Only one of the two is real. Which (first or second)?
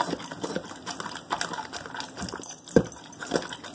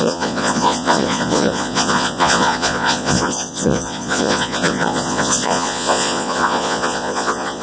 first